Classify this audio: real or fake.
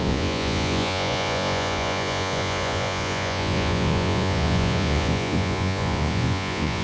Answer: fake